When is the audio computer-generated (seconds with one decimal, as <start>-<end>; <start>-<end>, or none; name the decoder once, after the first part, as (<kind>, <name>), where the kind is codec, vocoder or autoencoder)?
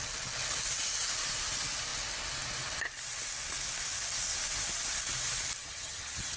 5.6-6.4 (vocoder, HiFi-GAN)